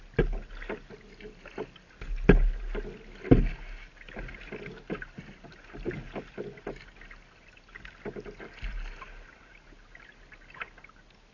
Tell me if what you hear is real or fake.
real